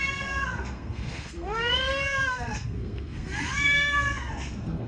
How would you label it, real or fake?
fake